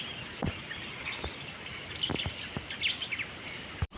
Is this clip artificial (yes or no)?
no